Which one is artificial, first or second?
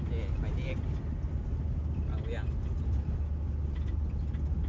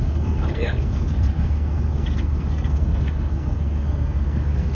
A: second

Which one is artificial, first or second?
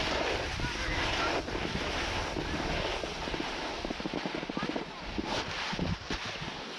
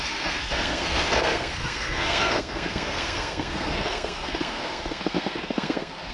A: second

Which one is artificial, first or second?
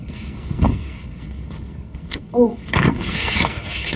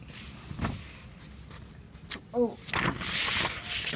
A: first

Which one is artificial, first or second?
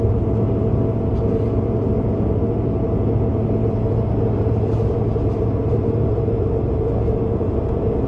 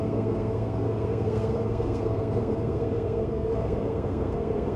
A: second